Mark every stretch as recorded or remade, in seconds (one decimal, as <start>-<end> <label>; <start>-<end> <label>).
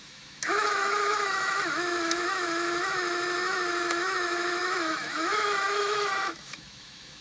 0.0-7.2 remade